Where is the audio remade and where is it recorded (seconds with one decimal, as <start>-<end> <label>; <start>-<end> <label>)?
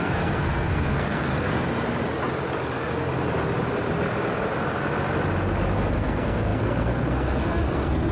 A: 0.0-1.3 remade; 1.3-5.9 recorded; 5.9-8.1 remade